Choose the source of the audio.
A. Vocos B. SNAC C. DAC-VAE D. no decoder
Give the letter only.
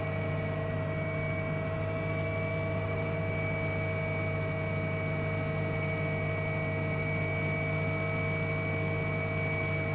D